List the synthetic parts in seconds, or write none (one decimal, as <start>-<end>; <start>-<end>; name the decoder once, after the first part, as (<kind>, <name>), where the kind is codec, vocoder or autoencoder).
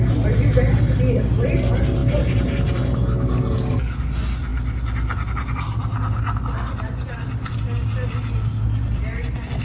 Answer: none